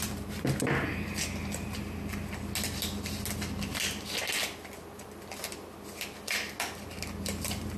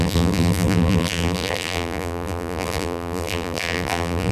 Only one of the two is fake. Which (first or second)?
second